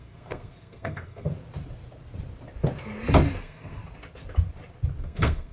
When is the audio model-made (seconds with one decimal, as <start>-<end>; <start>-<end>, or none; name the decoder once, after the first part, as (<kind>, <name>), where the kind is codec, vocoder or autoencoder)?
0.0-1.3 (codec, SNAC); 3.4-3.8; 5.0-5.5